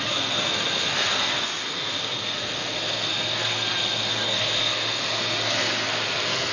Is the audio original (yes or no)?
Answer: no